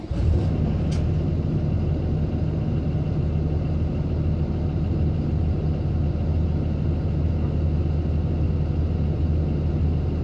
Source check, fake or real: real